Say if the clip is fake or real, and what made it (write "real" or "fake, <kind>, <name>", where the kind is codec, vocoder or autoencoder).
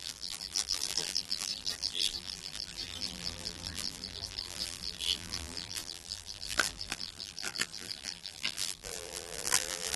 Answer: fake, vocoder, BigVGAN v2